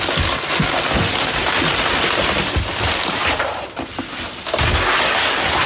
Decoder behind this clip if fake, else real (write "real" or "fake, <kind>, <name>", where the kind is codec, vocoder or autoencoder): real